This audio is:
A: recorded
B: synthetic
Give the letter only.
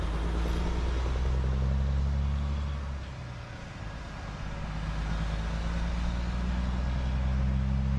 A